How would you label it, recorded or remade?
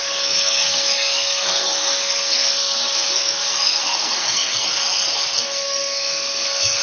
remade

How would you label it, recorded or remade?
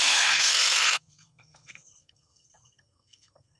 remade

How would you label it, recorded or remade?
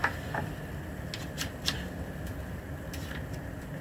recorded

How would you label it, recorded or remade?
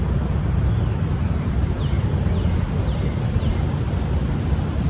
recorded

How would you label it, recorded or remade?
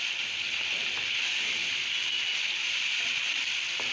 recorded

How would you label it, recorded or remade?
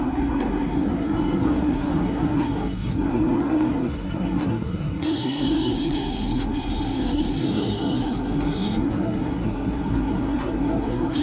remade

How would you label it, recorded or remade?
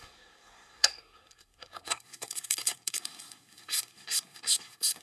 remade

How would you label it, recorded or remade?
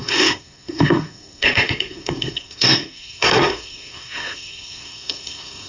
remade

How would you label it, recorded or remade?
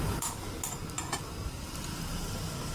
recorded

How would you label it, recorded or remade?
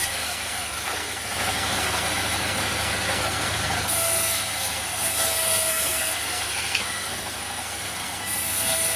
remade